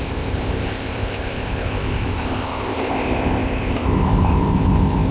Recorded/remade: remade